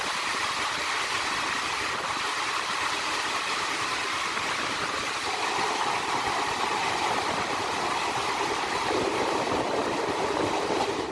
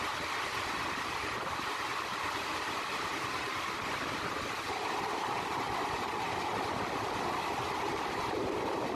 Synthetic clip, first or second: first